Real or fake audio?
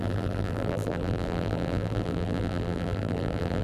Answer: fake